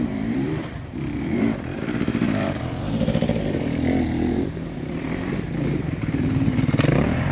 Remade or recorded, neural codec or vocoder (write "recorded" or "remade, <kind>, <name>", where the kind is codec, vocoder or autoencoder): remade, vocoder, BigVGAN v2